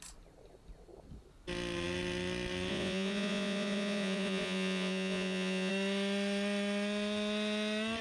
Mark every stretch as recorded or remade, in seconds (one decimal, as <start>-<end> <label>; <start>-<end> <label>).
0.0-2.7 recorded; 2.7-5.7 remade; 5.7-8.0 recorded

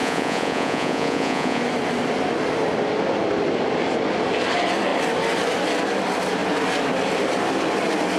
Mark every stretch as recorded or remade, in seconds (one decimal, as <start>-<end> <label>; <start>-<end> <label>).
0.0-1.6 remade; 1.6-8.2 recorded